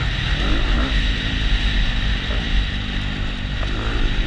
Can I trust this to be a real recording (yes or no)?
yes